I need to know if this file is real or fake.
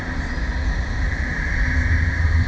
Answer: fake